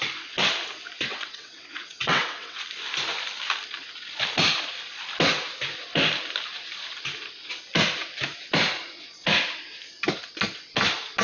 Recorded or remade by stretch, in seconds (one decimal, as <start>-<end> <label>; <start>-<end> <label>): 0.0-1.1 recorded; 1.1-2.6 remade; 2.6-11.2 recorded